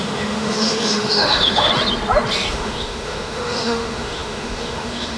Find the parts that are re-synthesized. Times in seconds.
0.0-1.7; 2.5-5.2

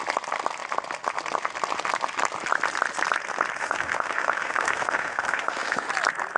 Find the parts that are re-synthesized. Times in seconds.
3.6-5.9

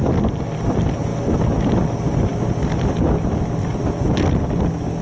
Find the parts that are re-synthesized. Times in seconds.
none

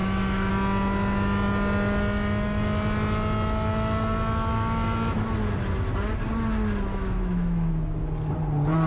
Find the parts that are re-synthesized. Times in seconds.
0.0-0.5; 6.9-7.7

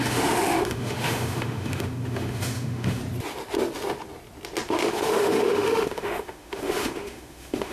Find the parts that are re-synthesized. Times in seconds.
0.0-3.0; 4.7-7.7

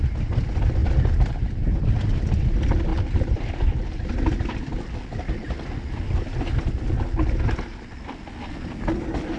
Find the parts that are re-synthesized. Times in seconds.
none